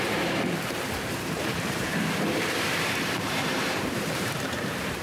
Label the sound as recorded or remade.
remade